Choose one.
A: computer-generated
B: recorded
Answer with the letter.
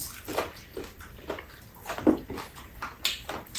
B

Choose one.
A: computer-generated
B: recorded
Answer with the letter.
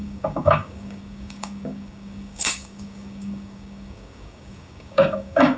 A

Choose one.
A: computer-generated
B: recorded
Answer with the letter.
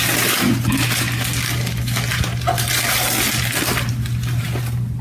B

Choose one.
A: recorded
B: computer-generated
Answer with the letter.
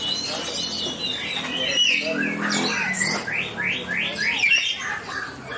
A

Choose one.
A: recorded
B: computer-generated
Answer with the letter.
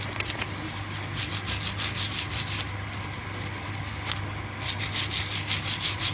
A